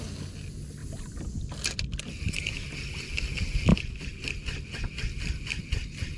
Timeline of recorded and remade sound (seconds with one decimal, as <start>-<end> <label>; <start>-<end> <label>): 0.0-6.2 recorded